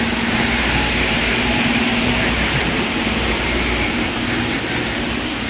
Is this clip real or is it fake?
fake